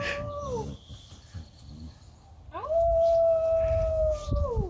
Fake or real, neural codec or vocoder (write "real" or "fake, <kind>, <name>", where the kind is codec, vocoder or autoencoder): real